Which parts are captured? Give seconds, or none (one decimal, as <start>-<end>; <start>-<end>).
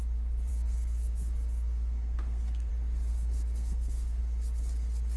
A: 0.0-0.5; 2.7-3.1; 4.2-5.2